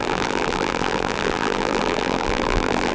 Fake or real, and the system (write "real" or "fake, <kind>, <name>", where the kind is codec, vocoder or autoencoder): fake, vocoder, BigVGAN v2